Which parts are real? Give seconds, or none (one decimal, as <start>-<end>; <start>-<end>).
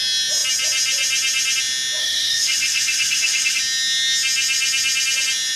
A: 0.0-2.0; 3.6-5.6